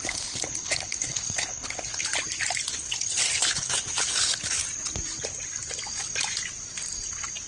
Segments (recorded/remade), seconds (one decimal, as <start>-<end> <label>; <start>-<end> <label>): 0.0-2.1 remade; 2.1-2.7 recorded; 2.7-4.6 remade; 4.6-7.5 recorded